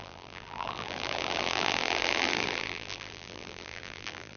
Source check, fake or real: fake